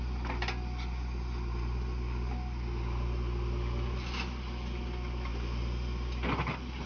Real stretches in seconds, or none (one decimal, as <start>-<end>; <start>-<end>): 0.0-6.9